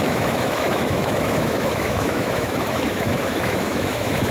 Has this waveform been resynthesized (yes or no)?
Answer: yes